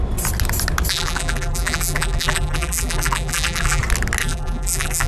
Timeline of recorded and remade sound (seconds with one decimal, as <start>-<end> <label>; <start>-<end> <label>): 0.0-0.9 recorded; 0.9-3.8 remade; 3.8-4.2 recorded; 4.2-5.1 remade